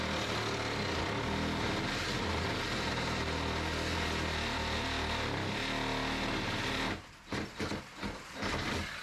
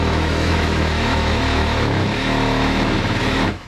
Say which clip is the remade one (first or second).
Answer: second